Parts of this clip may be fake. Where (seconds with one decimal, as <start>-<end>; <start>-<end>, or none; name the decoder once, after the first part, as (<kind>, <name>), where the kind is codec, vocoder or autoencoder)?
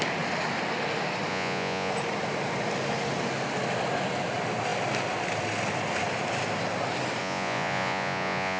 1.3-1.9 (vocoder, Vocos); 7.2-8.6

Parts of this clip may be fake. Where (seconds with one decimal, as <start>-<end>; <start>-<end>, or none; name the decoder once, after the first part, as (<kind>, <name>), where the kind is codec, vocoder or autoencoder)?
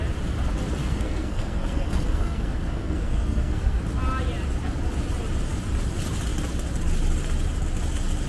0.8-3.8 (codec, SNAC)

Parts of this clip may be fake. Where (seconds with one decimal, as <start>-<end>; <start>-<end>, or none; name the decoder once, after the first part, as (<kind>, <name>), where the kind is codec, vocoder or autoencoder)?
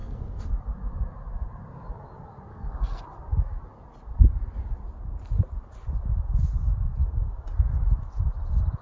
0.0-0.5 (codec, SNAC); 2.5-3.0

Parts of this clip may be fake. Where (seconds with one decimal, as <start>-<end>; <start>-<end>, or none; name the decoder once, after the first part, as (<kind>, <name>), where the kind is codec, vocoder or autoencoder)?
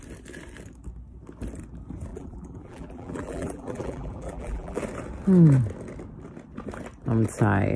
2.1-4.8 (vocoder, BigVGAN v2)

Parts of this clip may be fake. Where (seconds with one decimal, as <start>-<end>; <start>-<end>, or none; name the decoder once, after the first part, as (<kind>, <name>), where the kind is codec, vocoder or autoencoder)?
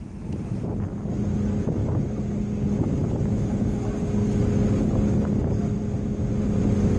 none